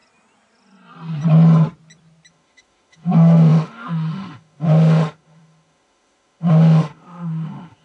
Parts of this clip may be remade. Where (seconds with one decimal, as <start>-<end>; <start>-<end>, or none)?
2.3-7.8